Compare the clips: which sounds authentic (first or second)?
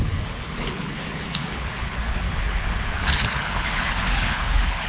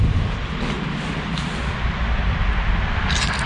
second